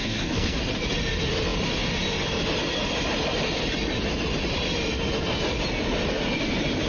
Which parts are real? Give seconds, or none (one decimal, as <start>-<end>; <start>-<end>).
0.6-6.9